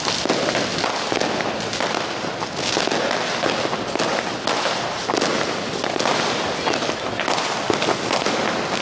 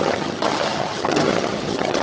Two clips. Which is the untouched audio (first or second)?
first